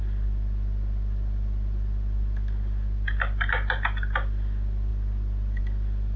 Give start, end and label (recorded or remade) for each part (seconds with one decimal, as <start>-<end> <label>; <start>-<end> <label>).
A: 0.0-6.2 recorded